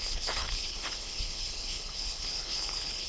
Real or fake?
fake